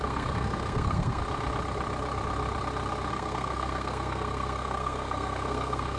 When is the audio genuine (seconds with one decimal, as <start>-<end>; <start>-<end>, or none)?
1.2-3.1